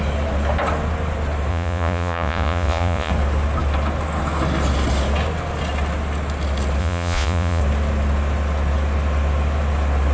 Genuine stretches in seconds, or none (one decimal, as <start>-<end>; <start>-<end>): 0.0-1.5; 3.1-6.8; 7.6-10.1